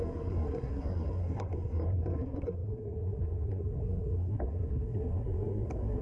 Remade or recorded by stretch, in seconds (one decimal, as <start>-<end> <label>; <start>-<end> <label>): 0.0-6.0 remade